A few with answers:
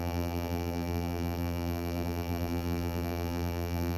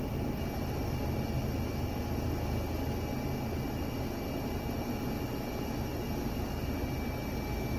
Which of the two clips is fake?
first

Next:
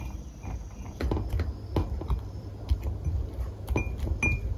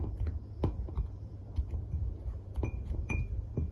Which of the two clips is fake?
second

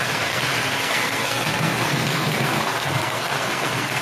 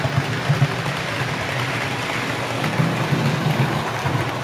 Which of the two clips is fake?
first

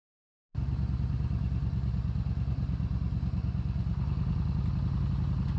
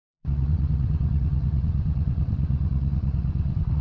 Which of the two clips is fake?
second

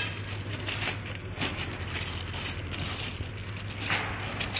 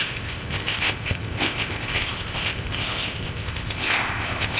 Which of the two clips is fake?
second